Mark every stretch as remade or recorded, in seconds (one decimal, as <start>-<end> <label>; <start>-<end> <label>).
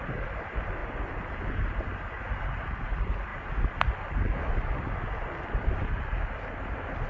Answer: 0.0-7.1 recorded